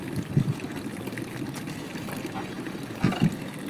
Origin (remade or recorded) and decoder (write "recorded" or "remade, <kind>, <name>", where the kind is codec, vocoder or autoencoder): recorded